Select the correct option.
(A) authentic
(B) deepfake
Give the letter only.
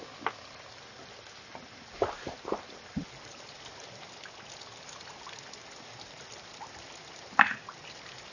A